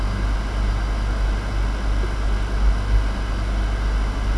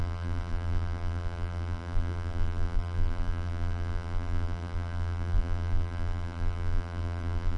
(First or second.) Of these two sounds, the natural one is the first